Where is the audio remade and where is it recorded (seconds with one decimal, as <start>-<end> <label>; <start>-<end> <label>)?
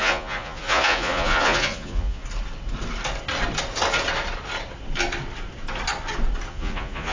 0.0-2.2 remade; 2.2-6.5 recorded; 6.5-7.1 remade